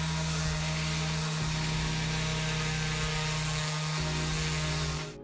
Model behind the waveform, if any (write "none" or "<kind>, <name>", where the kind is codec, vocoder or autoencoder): none